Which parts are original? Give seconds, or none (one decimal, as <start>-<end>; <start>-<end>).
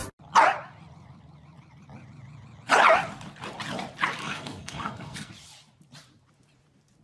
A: 0.0-4.2; 5.3-7.0